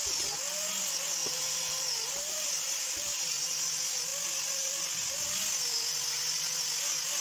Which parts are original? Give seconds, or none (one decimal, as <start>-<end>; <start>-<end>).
0.0-1.2; 3.6-7.2